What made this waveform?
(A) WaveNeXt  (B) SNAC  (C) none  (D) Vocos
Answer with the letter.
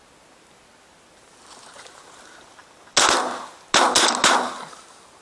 C